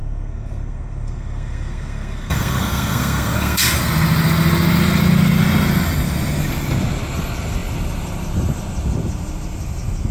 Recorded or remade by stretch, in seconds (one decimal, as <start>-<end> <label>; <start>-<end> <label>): 0.0-3.8 remade; 3.8-10.1 recorded